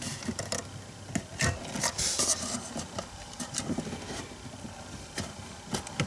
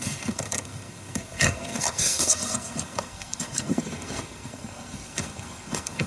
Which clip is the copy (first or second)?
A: second